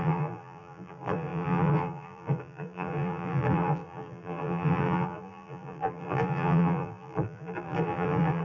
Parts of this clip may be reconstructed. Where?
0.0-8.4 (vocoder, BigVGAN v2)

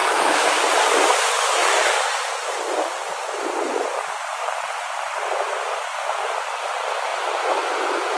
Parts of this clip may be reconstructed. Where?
0.0-0.6 (autoencoder, DAC-VAE)

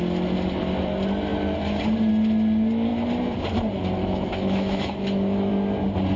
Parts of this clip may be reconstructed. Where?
4.0-5.5 (autoencoder, DAC-VAE)

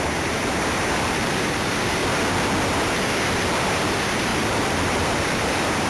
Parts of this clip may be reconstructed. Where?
0.0-2.0 (vocoder, BigVGAN v2); 3.6-5.9

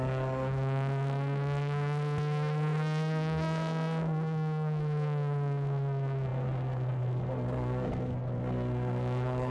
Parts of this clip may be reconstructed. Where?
0.0-9.5 (codec, SNAC)

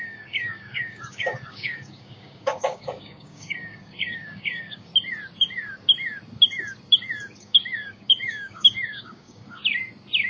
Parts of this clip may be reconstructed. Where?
0.0-4.9 (codec, DAC); 7.4-9.6

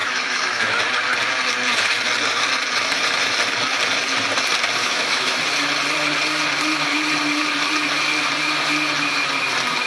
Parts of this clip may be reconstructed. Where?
0.0-0.8 (autoencoder, DAC-VAE); 4.8-5.4

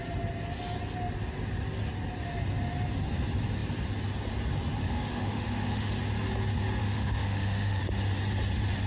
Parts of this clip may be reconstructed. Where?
4.8-5.9 (autoencoder, DAC-VAE); 6.8-7.8